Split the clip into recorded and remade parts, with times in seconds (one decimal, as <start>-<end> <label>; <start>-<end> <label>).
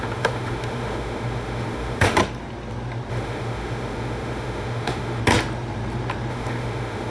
0.0-2.2 remade; 2.2-3.1 recorded; 3.1-5.2 remade; 5.2-6.3 recorded; 6.3-7.1 remade